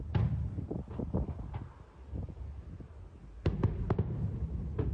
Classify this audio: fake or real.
real